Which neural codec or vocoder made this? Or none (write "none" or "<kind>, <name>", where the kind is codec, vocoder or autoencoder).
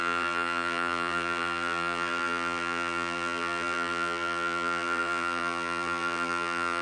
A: vocoder, BigVGAN v2